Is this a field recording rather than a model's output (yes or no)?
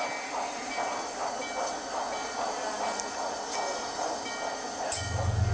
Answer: yes